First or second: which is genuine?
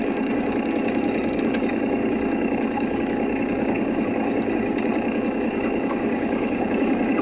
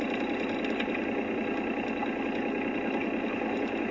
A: second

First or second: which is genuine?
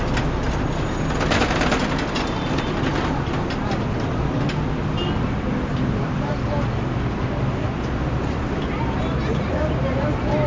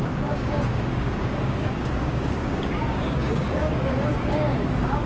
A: first